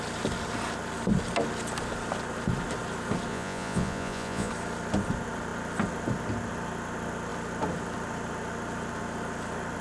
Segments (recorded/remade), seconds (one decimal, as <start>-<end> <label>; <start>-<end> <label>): 0.0-3.3 recorded; 3.3-4.5 remade; 4.5-9.8 recorded